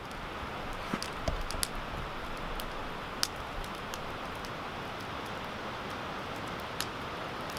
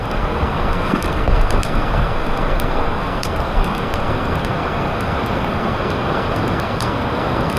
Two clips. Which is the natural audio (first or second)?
first